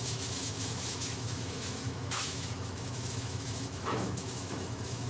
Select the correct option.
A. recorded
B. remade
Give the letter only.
B